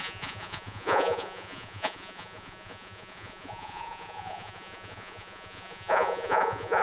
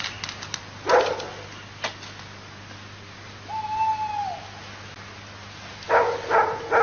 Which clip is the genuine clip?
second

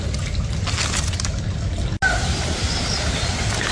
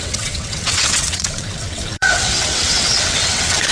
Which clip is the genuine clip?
first